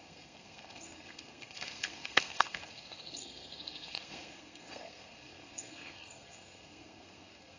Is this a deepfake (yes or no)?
yes